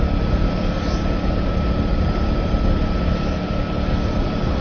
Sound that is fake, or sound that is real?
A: real